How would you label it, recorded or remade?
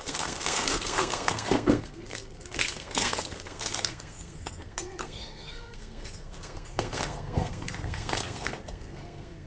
remade